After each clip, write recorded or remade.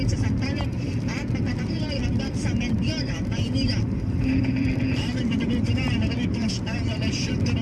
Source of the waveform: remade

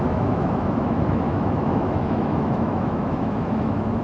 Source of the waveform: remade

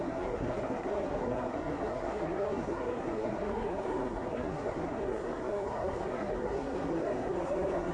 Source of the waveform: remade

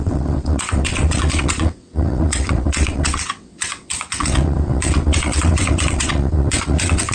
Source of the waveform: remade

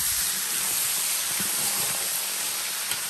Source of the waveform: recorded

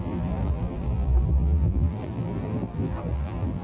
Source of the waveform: remade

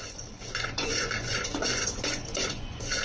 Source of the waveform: remade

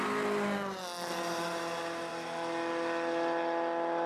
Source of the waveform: recorded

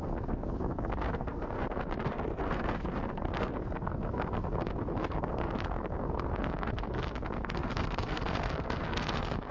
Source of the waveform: remade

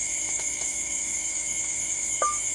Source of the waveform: remade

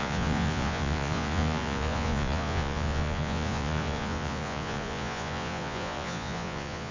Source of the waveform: remade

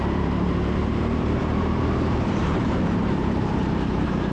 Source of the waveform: remade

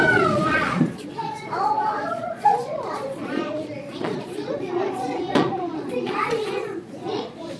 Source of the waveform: remade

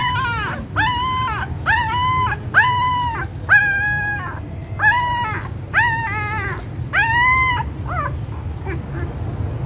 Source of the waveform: recorded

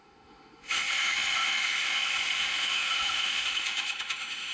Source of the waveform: remade